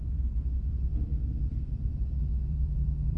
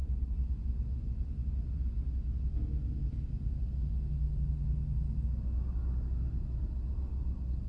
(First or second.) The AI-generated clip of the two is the first